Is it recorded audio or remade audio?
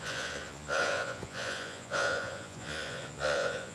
remade